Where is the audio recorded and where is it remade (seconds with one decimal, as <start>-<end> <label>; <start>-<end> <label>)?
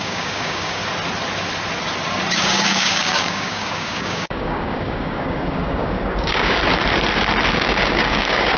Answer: 0.0-0.8 remade; 0.8-2.3 recorded; 2.3-6.6 remade; 6.6-7.5 recorded; 7.5-8.6 remade